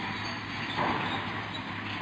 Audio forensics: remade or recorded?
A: recorded